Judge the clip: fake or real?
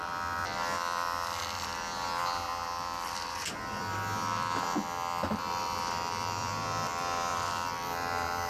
fake